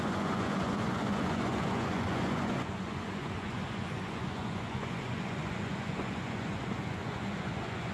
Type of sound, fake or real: fake